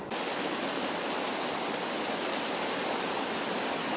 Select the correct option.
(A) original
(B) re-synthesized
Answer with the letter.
A